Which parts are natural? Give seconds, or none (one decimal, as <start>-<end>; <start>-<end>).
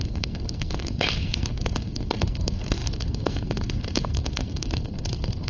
none